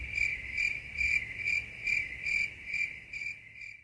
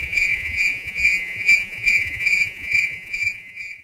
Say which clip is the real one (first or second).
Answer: first